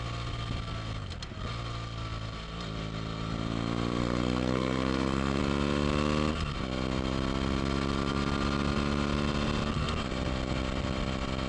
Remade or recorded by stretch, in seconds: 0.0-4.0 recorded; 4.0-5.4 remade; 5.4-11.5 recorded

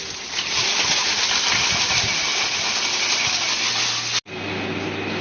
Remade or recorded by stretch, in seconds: 0.0-5.2 recorded